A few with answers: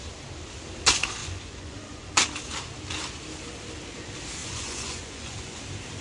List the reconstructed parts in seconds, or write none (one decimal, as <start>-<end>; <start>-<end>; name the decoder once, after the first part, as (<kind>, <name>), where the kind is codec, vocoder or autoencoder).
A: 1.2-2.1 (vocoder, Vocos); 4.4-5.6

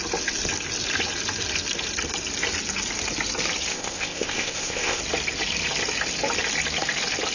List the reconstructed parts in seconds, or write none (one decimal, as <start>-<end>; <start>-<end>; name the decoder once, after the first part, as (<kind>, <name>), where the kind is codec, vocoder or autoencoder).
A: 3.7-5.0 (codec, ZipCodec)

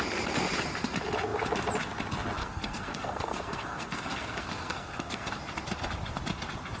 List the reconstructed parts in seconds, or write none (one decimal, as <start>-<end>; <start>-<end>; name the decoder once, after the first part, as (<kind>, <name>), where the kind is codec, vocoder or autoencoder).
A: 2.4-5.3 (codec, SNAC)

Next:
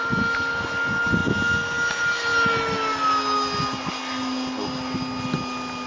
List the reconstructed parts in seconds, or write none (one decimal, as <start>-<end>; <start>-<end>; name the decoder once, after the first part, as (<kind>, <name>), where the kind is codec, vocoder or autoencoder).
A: none

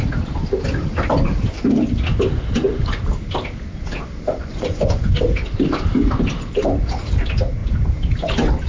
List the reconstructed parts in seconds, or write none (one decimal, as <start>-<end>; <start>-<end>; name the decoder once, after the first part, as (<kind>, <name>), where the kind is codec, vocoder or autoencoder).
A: 4.4-5.2 (vocoder, Vocos)